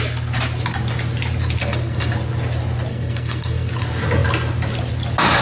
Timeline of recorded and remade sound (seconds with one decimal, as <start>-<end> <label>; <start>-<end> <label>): 0.0-1.6 recorded; 1.6-2.1 remade; 2.1-2.9 recorded; 2.9-3.7 remade; 3.7-5.4 recorded